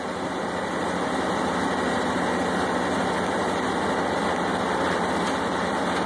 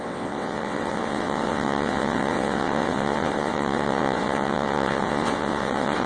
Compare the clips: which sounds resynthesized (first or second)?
second